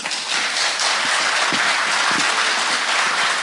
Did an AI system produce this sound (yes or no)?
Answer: no